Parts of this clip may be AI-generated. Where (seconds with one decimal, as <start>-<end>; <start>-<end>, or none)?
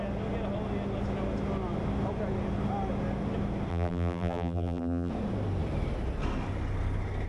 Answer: 3.7-5.1